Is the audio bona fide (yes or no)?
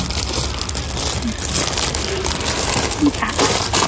yes